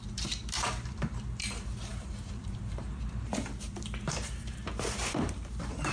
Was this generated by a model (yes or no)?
yes